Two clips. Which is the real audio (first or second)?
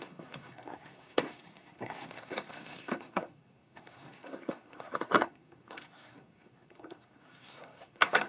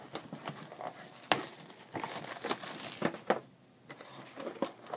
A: second